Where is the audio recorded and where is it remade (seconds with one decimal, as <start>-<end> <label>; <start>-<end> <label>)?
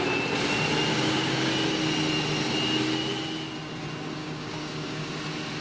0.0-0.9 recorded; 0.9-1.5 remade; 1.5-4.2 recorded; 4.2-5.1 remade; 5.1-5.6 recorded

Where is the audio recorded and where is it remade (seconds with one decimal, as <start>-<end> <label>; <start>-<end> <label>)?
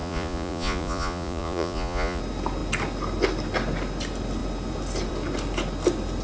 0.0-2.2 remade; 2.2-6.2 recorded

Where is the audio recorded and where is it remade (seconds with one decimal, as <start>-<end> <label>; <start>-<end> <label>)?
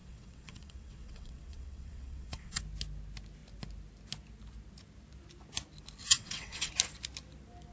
0.0-2.6 remade; 2.6-6.0 recorded; 6.0-6.7 remade; 6.7-7.7 recorded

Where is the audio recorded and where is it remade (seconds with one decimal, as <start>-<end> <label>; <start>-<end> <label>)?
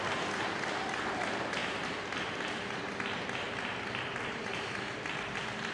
0.0-4.1 recorded; 4.1-4.7 remade; 4.7-5.7 recorded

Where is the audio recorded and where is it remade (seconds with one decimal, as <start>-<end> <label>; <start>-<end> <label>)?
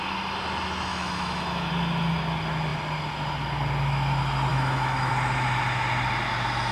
0.0-0.9 recorded; 0.9-1.7 remade; 1.7-4.5 recorded; 4.5-5.1 remade; 5.1-6.7 recorded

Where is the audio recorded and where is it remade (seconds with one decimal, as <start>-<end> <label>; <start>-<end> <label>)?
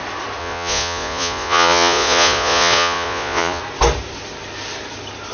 0.0-0.4 recorded; 0.4-3.6 remade; 3.6-5.3 recorded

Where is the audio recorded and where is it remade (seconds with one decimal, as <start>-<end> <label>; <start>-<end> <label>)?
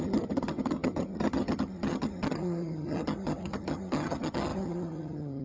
0.0-5.4 remade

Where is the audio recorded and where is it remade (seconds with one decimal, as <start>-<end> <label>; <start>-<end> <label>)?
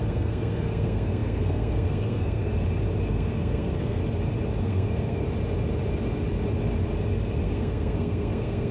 0.0-2.5 remade; 2.5-3.1 recorded; 3.1-4.0 remade; 4.0-4.6 recorded; 4.6-5.2 remade; 5.2-7.4 recorded; 7.4-8.7 remade